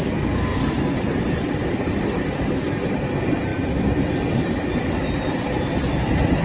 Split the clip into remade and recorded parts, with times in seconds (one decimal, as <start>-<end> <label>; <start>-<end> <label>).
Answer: 0.0-0.5 recorded; 0.5-2.0 remade; 2.0-3.5 recorded; 3.5-5.6 remade; 5.6-6.4 recorded